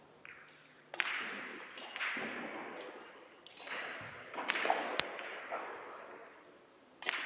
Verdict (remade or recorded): recorded